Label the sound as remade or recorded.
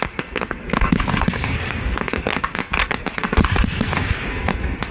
remade